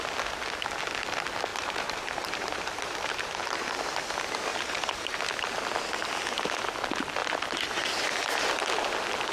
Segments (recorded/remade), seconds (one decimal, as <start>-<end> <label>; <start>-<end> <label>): 0.0-1.5 recorded; 1.5-3.8 remade; 3.8-4.5 recorded; 4.5-5.2 remade; 5.2-9.3 recorded